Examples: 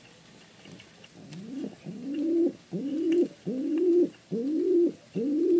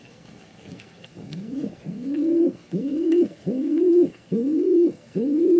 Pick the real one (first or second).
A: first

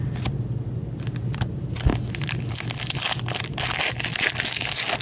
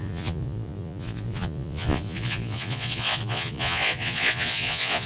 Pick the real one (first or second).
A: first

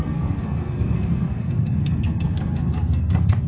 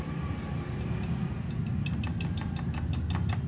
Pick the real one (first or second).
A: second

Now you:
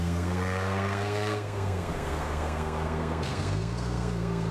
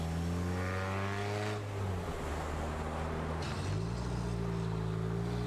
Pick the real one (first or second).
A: second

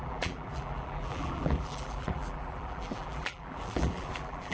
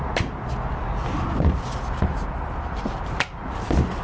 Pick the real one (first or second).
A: second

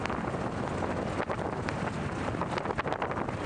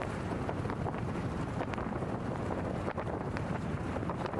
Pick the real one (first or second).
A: first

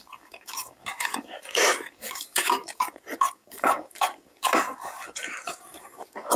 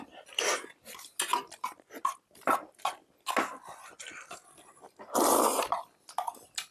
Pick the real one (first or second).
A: second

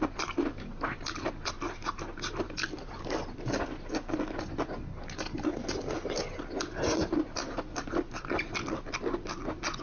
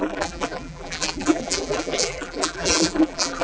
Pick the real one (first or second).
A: first